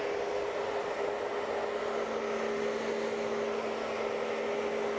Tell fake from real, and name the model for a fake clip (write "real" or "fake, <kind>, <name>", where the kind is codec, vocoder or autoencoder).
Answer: real